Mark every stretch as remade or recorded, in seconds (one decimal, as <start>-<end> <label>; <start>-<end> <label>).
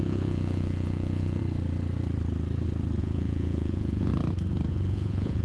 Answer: 0.0-1.4 remade; 1.4-3.0 recorded; 3.0-4.1 remade; 4.1-4.7 recorded; 4.7-5.4 remade